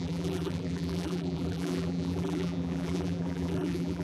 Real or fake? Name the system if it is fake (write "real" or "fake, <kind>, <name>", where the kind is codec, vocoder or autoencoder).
fake, vocoder, BigVGAN v2